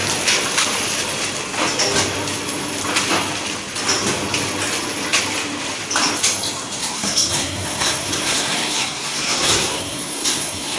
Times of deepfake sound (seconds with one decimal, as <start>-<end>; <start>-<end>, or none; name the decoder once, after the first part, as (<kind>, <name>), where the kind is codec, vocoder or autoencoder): 6.8-10.8 (codec, SNAC)